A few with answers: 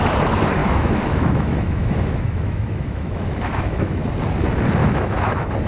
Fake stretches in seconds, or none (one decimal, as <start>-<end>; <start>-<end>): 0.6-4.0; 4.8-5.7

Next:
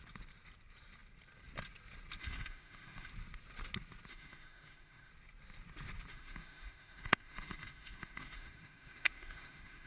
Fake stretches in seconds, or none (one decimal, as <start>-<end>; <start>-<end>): 2.2-3.1; 4.1-5.1; 6.1-9.9

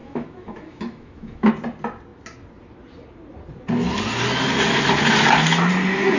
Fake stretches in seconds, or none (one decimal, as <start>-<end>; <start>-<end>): 0.0-1.5

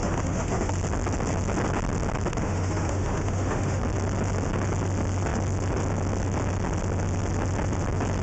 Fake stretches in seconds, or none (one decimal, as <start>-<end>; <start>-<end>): 0.0-0.7; 2.3-3.8

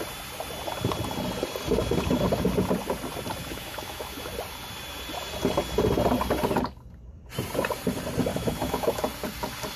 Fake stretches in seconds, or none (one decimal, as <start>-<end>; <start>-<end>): 3.4-4.3; 8.3-9.0

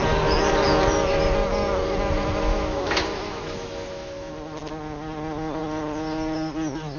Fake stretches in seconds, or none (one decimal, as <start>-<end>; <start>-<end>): 2.5-4.3